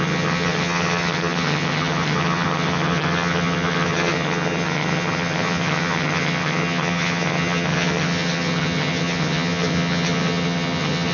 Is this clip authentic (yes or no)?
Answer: no